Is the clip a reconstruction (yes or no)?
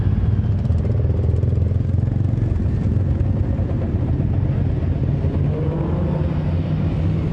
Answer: no